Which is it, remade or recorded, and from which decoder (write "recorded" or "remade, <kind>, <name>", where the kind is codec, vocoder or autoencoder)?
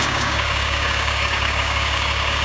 remade, codec, DAC